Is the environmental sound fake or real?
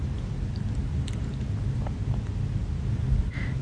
real